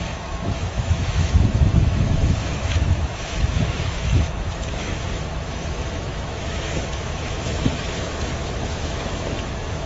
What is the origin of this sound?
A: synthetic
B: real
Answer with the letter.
A